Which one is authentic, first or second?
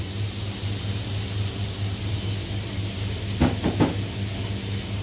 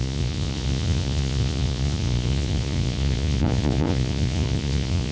first